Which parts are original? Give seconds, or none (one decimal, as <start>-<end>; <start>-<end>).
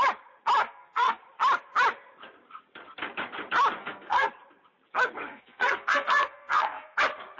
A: 0.0-0.6; 1.2-3.8; 4.3-5.3; 7.0-7.4